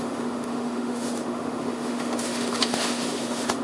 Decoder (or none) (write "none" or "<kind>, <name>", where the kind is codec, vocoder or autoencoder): autoencoder, DAC-VAE